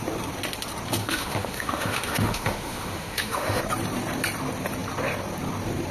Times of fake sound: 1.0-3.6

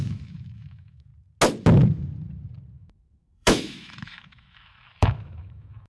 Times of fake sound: 0.0-1.1; 2.7-5.9

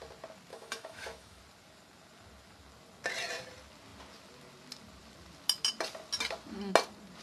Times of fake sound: 0.5-1.4

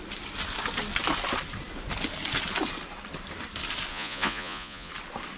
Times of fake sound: 3.9-4.9

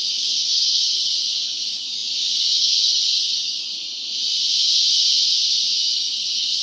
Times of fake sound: 0.0-3.7; 5.9-6.6